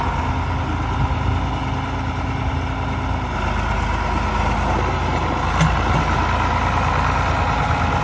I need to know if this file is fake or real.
real